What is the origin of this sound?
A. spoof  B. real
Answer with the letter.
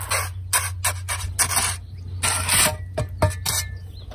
B